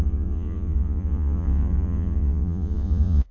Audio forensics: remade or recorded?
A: remade